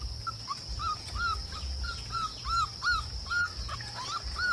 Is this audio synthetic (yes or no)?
no